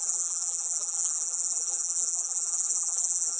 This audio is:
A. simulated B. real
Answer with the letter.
A